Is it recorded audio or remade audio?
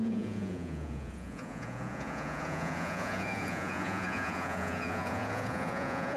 remade